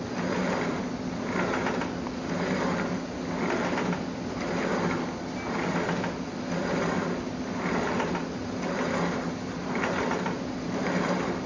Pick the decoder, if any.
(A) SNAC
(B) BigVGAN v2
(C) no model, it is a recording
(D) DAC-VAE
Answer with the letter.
C